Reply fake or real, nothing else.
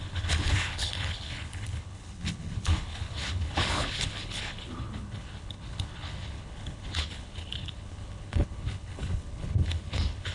fake